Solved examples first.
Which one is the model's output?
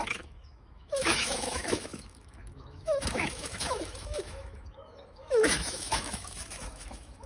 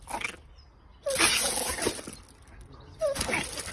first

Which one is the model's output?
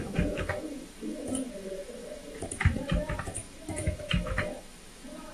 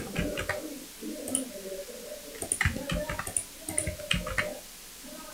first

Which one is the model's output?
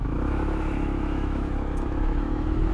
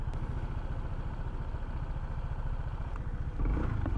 first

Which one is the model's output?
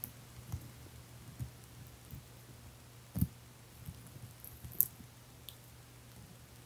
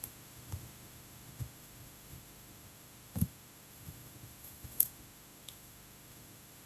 second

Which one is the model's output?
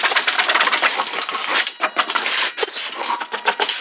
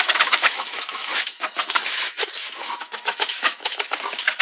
second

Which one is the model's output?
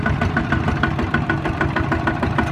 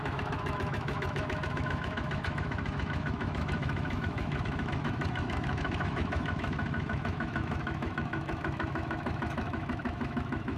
second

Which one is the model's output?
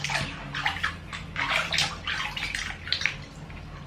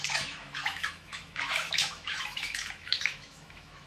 second